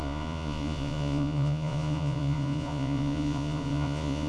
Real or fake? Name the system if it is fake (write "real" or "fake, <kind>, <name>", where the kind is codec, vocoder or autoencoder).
fake, vocoder, Vocos